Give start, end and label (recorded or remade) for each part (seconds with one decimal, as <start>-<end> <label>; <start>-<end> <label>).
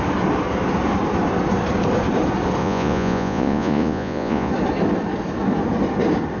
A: 0.0-2.6 recorded; 2.6-4.5 remade; 4.5-6.4 recorded